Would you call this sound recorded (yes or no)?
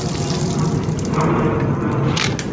yes